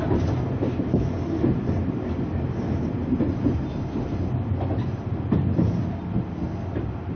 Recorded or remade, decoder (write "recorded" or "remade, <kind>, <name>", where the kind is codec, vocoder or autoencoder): recorded